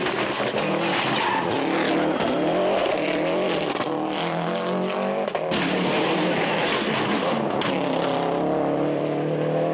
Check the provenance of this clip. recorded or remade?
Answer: recorded